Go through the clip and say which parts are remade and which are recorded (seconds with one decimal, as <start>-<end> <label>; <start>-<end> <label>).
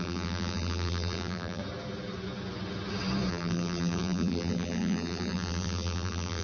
0.0-1.6 remade; 1.6-3.3 recorded; 3.3-6.4 remade